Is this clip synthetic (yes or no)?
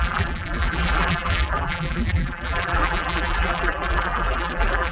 yes